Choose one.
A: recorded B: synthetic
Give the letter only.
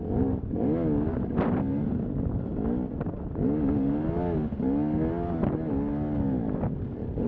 A